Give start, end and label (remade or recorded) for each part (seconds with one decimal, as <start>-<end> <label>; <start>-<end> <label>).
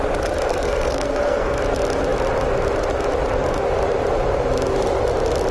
0.0-0.5 recorded; 0.5-1.6 remade; 1.6-5.5 recorded